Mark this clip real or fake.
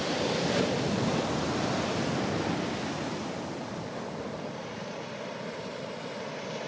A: real